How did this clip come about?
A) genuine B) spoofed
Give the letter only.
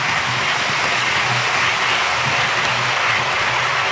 A